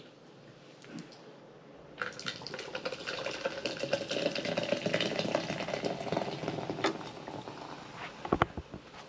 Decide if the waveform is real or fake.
real